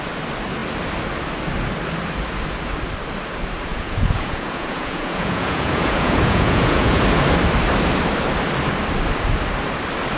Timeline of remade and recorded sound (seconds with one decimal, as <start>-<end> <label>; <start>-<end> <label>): 0.0-3.7 recorded; 3.7-7.0 remade; 7.0-10.2 recorded